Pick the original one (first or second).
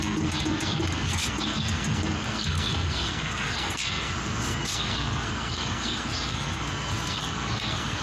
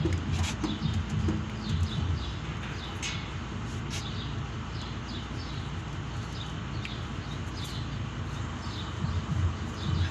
second